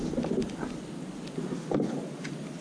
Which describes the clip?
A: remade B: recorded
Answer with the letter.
B